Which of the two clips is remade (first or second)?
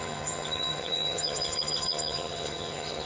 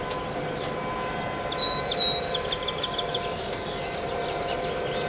first